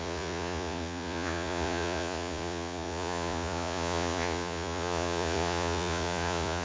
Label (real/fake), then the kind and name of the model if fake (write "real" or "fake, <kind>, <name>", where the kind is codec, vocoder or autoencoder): fake, vocoder, Vocos